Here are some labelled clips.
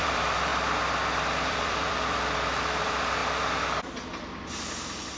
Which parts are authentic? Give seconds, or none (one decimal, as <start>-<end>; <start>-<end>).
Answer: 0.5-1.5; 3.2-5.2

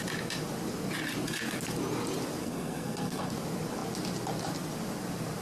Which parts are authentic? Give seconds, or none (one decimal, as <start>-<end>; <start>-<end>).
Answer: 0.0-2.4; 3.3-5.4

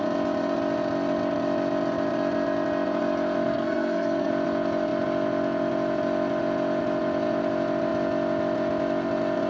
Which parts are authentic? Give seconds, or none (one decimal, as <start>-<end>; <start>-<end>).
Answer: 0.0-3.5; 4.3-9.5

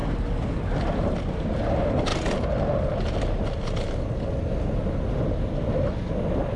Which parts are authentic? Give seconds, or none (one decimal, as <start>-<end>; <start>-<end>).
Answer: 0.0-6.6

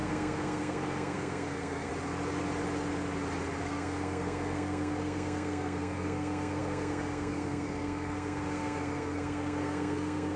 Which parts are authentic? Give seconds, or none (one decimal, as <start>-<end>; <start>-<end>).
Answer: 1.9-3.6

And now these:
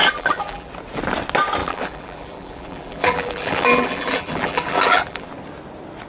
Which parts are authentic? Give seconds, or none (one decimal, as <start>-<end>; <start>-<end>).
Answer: 0.7-1.6; 5.3-6.1

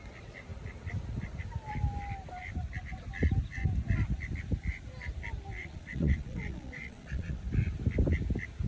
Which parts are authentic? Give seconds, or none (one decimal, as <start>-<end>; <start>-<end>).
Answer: 0.0-5.6; 7.4-8.7

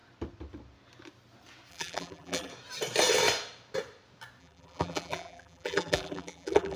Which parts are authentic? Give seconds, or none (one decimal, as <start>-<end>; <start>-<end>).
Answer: 0.0-1.7; 2.5-4.4